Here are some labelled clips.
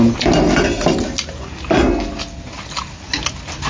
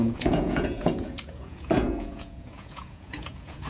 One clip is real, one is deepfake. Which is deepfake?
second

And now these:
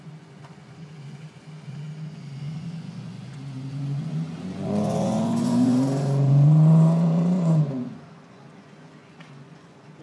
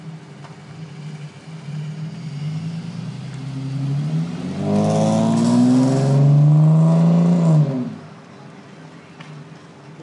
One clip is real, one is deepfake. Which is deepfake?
first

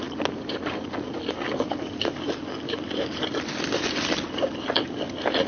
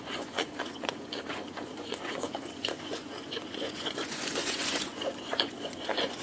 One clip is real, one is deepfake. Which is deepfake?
second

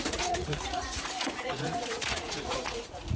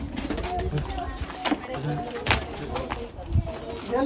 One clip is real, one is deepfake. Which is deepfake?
first